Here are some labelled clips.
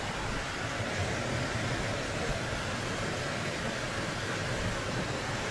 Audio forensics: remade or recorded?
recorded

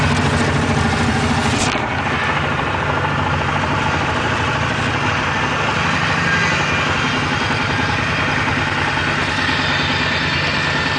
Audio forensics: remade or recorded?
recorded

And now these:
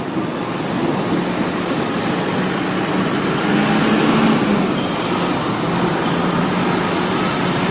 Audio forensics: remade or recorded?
recorded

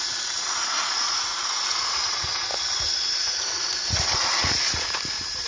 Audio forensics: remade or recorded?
remade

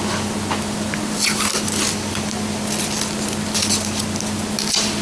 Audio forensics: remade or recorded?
recorded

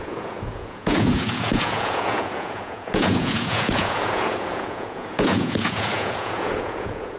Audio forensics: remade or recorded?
remade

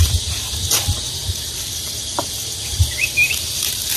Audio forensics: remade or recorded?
remade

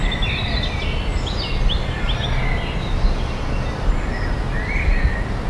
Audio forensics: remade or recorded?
recorded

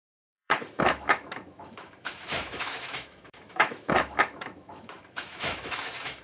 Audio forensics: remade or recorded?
remade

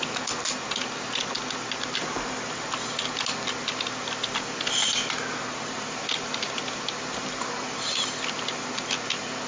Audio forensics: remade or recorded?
recorded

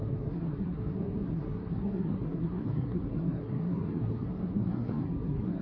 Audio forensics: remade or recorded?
remade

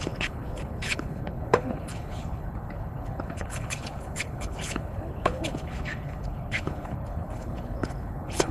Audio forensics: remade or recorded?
remade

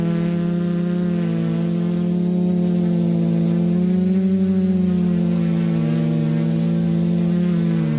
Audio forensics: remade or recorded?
recorded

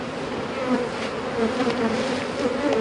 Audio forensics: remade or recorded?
remade